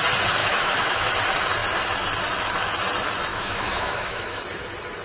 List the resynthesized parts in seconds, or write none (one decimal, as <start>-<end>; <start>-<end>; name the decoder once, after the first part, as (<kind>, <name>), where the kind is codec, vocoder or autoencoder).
0.4-1.1 (autoencoder, DAC-VAE); 3.3-4.4